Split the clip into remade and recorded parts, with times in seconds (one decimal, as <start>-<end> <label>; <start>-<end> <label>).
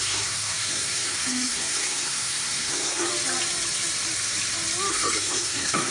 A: 0.0-3.1 remade; 3.1-4.9 recorded; 4.9-5.9 remade